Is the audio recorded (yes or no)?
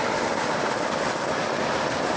yes